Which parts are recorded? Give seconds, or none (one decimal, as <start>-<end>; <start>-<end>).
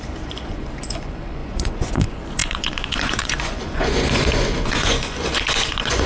none